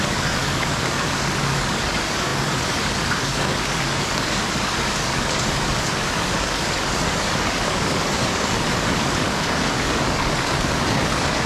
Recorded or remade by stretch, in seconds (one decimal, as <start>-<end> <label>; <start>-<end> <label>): 0.0-11.5 remade

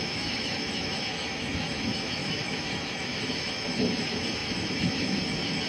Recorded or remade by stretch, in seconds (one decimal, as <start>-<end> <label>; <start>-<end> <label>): 0.0-5.7 remade

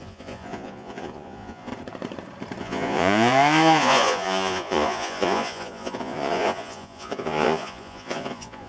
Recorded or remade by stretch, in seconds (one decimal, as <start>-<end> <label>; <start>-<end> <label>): 0.0-1.7 remade; 1.7-2.6 recorded; 2.6-8.7 remade

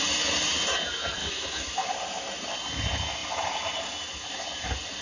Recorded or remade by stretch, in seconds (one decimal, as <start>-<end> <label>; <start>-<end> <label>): 0.0-1.2 recorded; 1.2-1.9 remade; 1.9-5.0 recorded

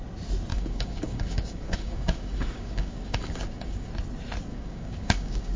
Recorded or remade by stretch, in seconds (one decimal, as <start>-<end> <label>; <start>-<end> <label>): 0.0-0.5 recorded; 0.5-3.9 remade; 3.9-4.5 recorded; 4.5-5.6 remade

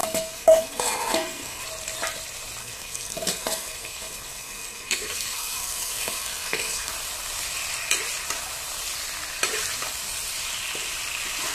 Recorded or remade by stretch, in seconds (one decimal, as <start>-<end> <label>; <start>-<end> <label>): 0.0-1.6 remade; 1.6-2.6 recorded; 2.6-6.9 remade; 6.9-11.5 recorded